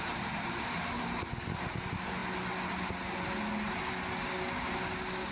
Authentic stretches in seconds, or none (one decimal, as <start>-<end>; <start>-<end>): 1.3-5.3